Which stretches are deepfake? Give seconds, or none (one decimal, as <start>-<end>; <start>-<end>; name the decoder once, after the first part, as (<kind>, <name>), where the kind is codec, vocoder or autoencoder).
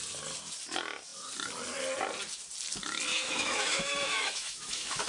3.1-5.1 (autoencoder, DAC-VAE)